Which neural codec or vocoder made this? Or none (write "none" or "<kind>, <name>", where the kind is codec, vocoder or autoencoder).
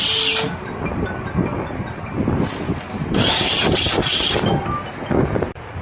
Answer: none